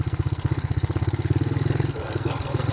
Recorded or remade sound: remade